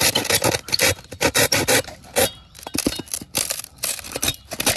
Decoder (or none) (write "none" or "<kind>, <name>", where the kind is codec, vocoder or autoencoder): vocoder, BigVGAN v2